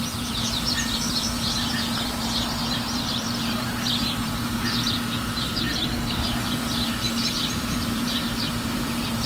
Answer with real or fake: fake